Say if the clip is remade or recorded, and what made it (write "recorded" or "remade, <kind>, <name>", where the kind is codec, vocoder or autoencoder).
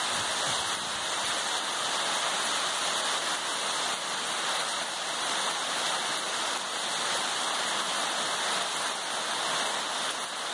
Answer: recorded